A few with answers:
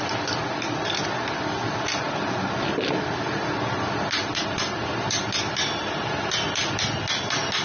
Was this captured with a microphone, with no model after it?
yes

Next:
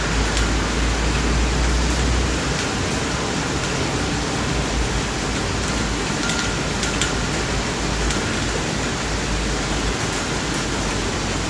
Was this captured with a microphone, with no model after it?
yes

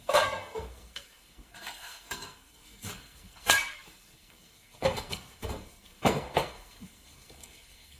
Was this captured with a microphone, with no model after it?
no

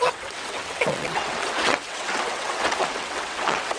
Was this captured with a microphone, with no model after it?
no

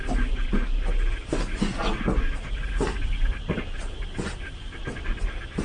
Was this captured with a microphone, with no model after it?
yes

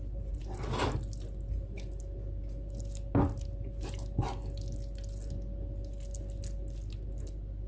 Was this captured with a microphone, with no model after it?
yes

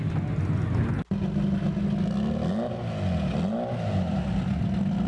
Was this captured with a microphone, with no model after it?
yes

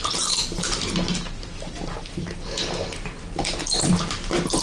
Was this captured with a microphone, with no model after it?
yes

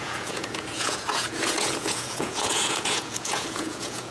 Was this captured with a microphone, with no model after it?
no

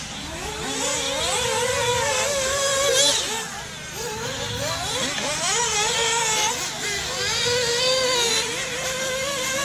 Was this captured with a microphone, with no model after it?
yes